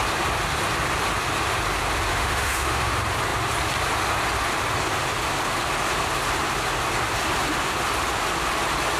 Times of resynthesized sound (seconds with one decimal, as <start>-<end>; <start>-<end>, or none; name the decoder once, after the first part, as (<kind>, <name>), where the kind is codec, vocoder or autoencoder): 2.1-2.9 (autoencoder, DAC-VAE)